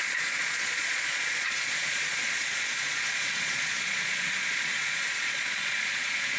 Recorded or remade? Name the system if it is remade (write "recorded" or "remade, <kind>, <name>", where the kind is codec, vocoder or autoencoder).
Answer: remade, vocoder, Vocos